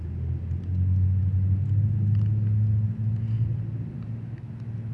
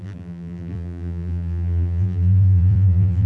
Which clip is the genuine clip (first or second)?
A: first